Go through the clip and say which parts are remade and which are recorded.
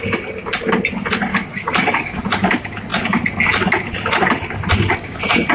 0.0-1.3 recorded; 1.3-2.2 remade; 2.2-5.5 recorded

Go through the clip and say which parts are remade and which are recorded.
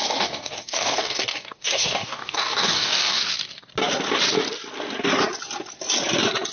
0.0-3.7 remade; 3.7-6.5 recorded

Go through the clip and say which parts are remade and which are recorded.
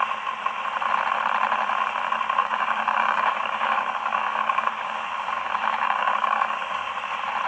0.0-2.4 recorded; 2.4-6.9 remade; 6.9-7.5 recorded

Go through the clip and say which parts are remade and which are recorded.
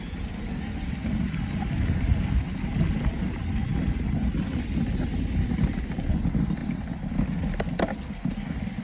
0.0-8.8 recorded